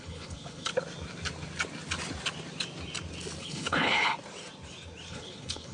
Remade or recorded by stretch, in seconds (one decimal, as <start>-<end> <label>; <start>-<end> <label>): 0.0-0.7 remade; 0.7-3.4 recorded; 3.4-4.1 remade; 4.1-5.1 recorded; 5.1-5.7 remade